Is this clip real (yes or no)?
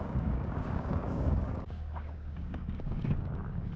no